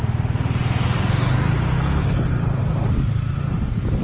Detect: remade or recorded recorded